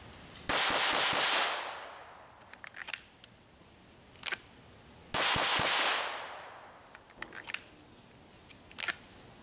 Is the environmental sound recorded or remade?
recorded